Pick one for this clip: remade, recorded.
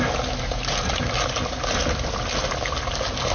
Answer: recorded